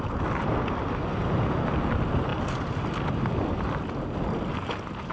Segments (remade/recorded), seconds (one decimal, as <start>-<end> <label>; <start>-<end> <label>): 0.0-5.1 recorded